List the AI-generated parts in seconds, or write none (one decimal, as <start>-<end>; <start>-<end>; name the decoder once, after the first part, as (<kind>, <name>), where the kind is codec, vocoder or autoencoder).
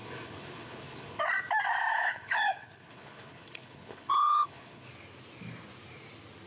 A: 0.0-1.2 (codec, HILCodec); 1.9-4.9